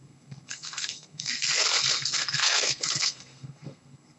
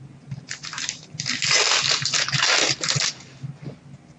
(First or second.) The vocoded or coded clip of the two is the first